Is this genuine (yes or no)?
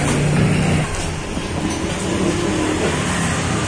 yes